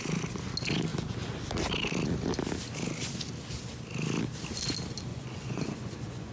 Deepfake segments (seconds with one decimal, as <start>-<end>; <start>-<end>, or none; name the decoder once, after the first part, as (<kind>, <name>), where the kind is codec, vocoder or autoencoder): 5.1-6.3 (vocoder, Vocos)